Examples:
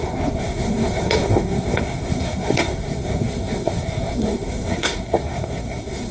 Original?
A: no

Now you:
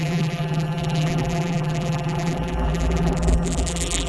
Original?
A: no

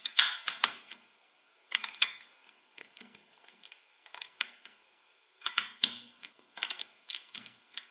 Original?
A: no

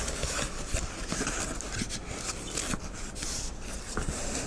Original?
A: yes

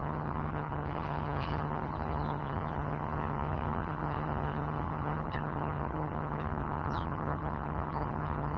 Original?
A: no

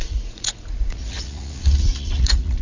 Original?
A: no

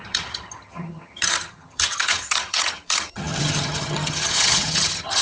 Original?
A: no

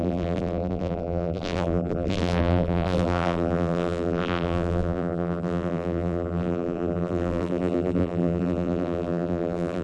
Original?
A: no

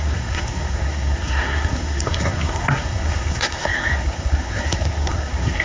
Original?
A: no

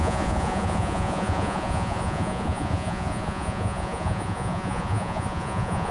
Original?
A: no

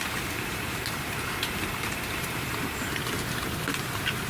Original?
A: no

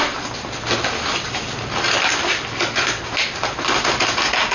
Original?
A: yes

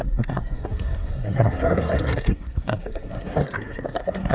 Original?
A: no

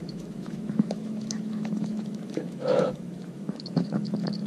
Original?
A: no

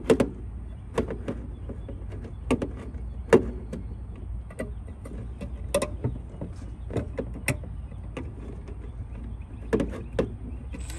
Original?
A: yes